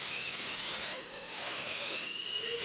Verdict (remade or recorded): remade